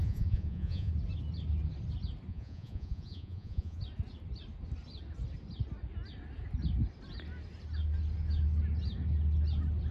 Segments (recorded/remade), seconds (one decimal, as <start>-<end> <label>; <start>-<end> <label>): 0.0-0.9 remade; 0.9-2.3 recorded; 2.3-3.8 remade; 3.8-9.9 recorded